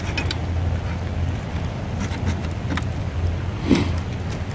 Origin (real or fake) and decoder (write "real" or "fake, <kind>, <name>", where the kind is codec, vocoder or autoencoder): real